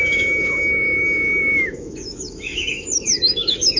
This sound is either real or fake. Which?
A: fake